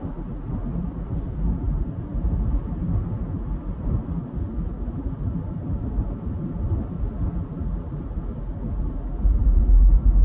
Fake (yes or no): no